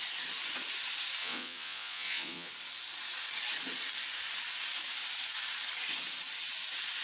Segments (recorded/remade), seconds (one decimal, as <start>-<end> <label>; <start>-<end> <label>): 0.0-1.2 recorded; 1.2-2.5 remade; 2.5-7.0 recorded